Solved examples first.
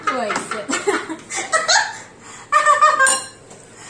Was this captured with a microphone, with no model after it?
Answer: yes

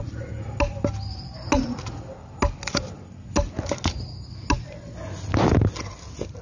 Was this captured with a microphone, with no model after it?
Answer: yes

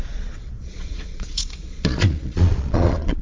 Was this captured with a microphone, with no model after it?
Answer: no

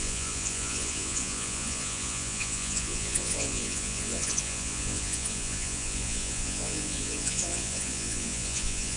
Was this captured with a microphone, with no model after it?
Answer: no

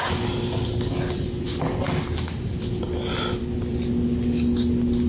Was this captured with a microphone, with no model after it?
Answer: yes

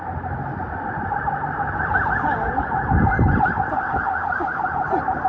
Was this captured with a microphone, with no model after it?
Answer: yes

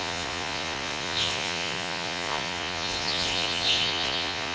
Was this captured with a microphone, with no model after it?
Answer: no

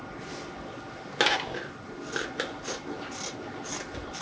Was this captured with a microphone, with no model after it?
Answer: yes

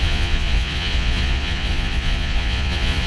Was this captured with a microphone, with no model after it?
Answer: no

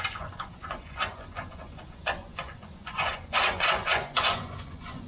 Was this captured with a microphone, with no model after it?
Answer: no